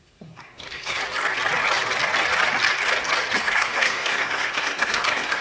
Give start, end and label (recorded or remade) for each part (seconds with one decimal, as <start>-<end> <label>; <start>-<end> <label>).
0.0-1.0 remade; 1.0-3.4 recorded; 3.4-5.4 remade